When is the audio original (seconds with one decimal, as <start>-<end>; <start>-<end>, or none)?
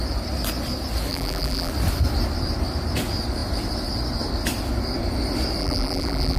0.0-1.1; 1.7-5.6